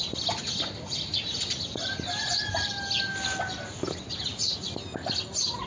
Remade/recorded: recorded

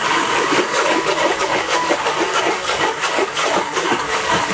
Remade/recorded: remade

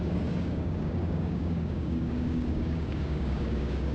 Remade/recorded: remade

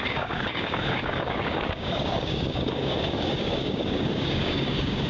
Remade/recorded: remade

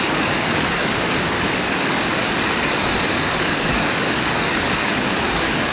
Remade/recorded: remade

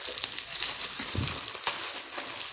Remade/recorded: recorded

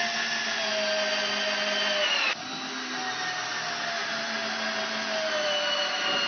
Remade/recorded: recorded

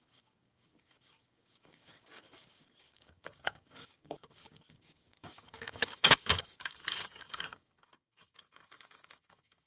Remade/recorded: remade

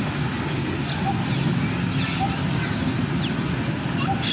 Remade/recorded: recorded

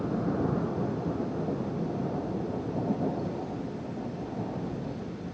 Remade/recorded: recorded